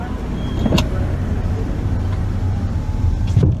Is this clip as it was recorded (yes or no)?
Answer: yes